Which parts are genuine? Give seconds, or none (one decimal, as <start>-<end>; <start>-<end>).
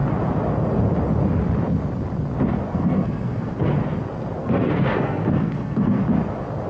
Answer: 0.0-2.7; 3.7-4.4; 6.0-6.7